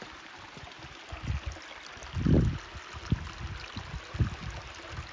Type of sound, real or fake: real